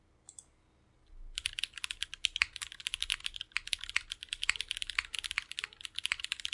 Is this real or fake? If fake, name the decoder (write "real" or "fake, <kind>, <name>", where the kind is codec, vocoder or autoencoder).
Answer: real